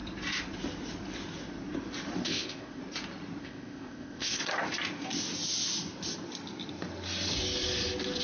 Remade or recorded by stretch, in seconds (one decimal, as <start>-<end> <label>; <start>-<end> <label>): 0.0-2.2 recorded; 2.2-2.8 remade; 2.8-3.4 recorded; 3.4-4.4 remade; 4.4-8.2 recorded